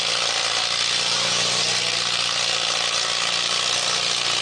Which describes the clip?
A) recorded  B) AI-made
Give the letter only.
A